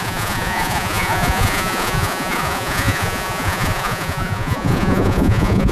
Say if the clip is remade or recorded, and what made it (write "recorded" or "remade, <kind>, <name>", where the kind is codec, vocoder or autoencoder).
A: remade, vocoder, Vocos